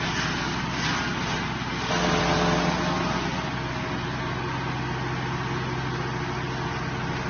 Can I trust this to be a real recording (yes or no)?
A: yes